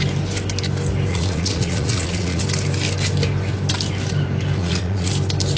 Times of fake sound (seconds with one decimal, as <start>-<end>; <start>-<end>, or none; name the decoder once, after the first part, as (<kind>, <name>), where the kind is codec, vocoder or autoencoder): 1.1-2.4 (vocoder, Vocos); 4.6-5.1